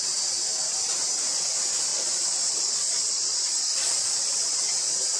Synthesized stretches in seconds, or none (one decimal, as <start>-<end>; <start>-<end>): 1.9-5.2